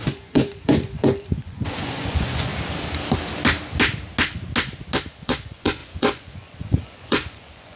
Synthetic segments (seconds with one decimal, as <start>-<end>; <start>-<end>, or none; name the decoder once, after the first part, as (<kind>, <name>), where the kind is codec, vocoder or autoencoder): 0.0-2.5 (vocoder, Vocos); 5.2-7.8